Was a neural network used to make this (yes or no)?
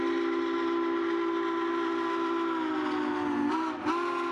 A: no